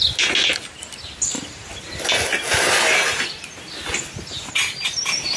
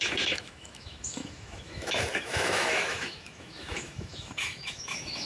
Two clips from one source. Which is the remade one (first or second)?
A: second